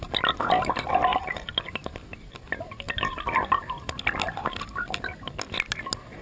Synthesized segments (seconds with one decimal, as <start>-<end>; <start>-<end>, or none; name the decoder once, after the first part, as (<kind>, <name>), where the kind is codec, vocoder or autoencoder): 1.1-1.7 (vocoder, BigVGAN v2)